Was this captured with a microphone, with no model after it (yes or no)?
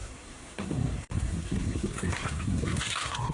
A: no